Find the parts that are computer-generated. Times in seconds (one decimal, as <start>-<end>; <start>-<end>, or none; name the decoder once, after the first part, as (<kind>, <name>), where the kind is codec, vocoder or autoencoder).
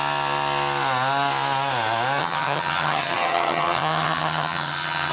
2.2-5.1 (vocoder, HiFi-GAN)